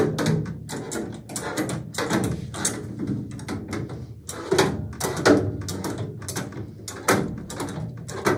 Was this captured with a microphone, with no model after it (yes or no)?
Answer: yes